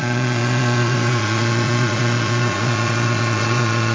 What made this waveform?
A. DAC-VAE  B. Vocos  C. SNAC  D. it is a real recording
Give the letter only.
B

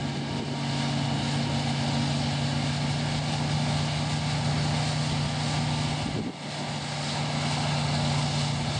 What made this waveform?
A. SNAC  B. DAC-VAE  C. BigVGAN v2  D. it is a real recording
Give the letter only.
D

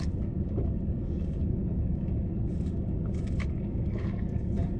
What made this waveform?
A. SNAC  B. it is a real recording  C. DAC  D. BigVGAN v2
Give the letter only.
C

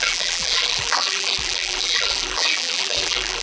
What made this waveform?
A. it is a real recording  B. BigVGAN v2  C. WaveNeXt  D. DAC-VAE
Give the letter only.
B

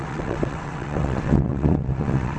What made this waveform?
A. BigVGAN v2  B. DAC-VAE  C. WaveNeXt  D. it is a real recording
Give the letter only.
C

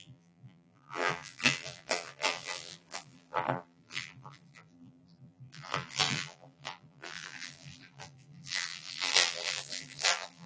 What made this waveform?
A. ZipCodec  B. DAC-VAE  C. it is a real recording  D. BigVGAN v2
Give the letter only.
D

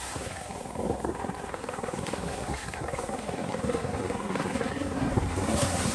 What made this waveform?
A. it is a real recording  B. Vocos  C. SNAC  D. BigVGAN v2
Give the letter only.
C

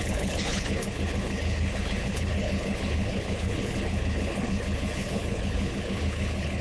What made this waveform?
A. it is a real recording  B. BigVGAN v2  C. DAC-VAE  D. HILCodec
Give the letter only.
D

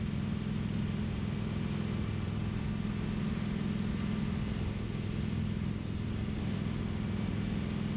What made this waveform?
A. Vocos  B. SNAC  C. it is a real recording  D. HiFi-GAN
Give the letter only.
C